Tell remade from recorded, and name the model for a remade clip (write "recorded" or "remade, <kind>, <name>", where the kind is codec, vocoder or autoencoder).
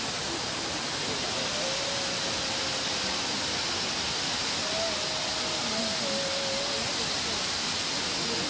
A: recorded